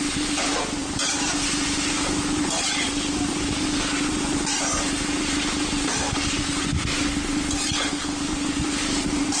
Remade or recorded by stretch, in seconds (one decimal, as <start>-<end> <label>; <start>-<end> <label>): 0.0-9.4 recorded